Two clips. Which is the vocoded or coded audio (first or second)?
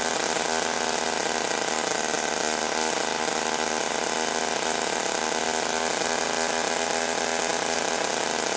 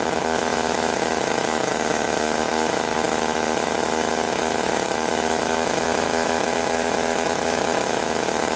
second